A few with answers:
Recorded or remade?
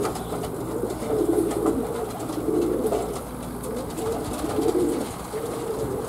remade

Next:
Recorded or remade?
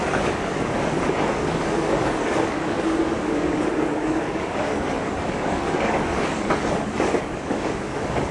remade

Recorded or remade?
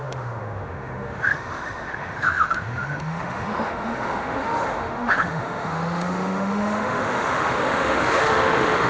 remade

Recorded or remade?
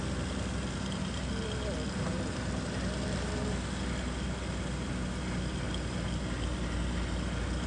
recorded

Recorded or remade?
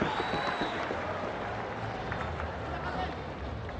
recorded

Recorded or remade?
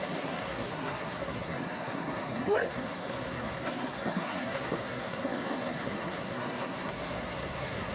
remade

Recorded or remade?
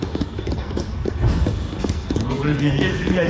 remade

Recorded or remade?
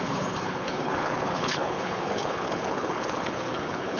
remade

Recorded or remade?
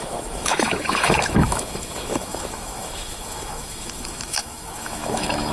remade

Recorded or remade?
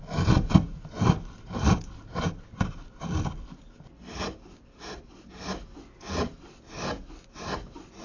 recorded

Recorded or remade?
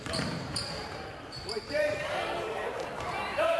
remade